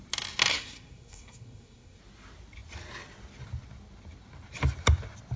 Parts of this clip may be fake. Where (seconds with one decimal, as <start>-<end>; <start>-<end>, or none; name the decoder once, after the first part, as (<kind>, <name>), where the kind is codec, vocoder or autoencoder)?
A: 0.5-2.0 (codec, SNAC)